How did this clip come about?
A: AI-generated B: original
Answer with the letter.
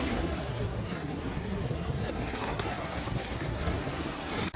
A